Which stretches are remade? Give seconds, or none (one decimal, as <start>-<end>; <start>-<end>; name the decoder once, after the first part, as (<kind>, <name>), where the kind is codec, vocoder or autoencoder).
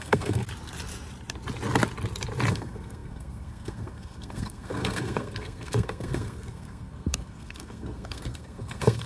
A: 0.0-0.4 (codec, SNAC); 2.5-9.1